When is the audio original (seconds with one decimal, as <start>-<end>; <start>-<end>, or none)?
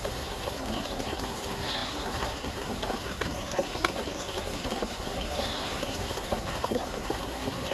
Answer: none